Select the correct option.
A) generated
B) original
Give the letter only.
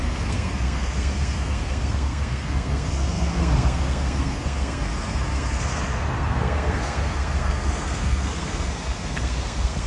A